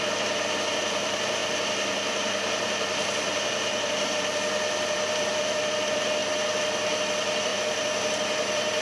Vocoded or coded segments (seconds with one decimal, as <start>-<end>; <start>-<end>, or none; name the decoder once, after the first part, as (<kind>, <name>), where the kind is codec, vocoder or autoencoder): 0.0-1.4 (vocoder, BigVGAN v2); 4.1-6.2; 7.0-8.8